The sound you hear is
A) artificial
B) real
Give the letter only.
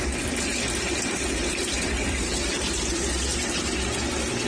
B